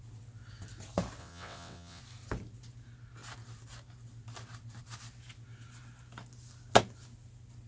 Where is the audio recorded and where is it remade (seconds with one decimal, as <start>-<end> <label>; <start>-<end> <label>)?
0.0-1.2 recorded; 1.2-2.0 remade; 2.0-7.7 recorded